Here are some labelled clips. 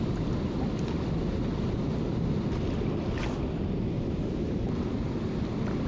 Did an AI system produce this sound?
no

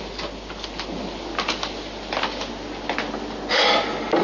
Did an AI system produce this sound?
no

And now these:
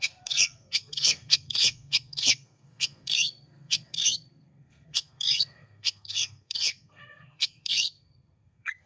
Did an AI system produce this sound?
yes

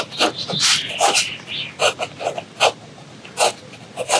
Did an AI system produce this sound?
no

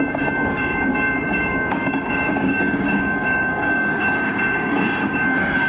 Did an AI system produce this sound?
yes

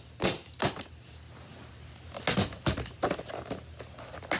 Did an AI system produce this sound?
no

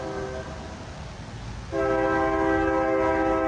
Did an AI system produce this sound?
no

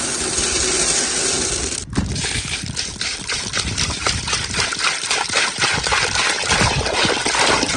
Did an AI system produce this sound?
no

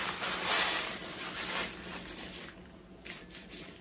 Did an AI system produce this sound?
no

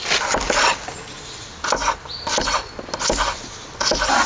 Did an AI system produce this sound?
no